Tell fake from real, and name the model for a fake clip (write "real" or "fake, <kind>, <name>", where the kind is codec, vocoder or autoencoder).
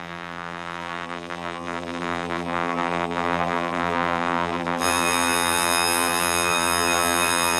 fake, vocoder, BigVGAN v2